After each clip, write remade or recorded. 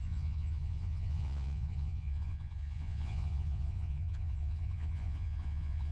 remade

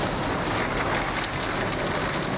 recorded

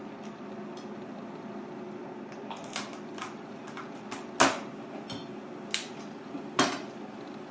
recorded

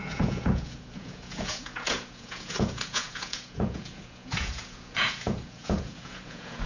remade